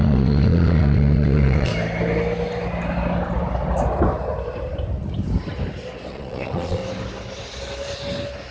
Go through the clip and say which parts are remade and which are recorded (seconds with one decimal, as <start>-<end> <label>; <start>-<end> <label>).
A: 0.0-1.7 remade; 1.7-6.1 recorded; 6.1-6.8 remade; 6.8-8.5 recorded